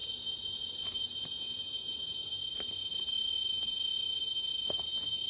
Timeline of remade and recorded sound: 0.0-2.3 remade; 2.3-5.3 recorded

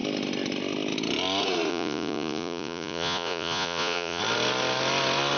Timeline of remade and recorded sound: 0.0-1.7 recorded; 1.7-4.2 remade; 4.2-5.4 recorded

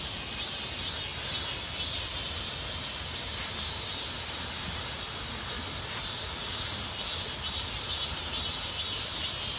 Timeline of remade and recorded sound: 0.0-9.6 recorded

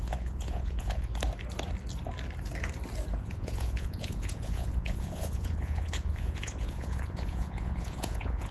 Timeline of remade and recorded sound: 0.0-1.1 remade; 1.1-3.2 recorded; 3.2-8.5 remade

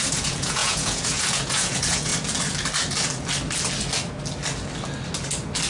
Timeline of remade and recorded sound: 0.0-2.1 remade; 2.1-5.7 recorded

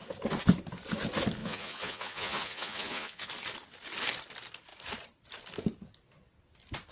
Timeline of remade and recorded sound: 0.0-1.4 recorded; 1.4-3.3 remade; 3.3-6.9 recorded

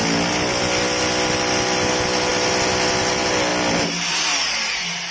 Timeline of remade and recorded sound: 0.0-5.1 recorded